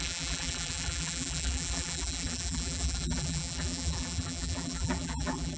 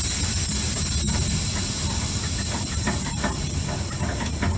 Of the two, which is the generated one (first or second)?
first